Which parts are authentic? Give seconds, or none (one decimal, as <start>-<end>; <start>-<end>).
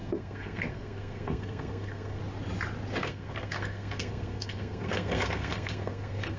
2.2-3.0